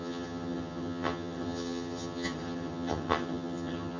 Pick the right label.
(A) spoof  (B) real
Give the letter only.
A